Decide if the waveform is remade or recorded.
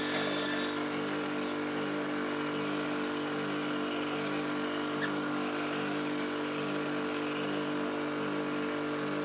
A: recorded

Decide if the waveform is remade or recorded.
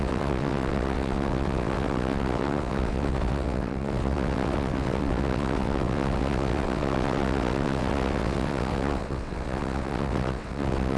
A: remade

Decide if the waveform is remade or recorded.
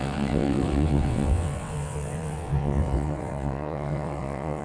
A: remade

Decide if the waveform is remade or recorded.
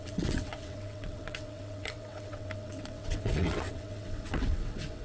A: remade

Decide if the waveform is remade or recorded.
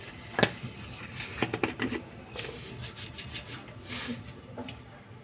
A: recorded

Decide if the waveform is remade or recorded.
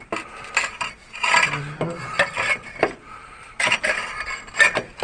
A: recorded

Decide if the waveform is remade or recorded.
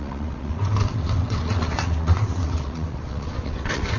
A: remade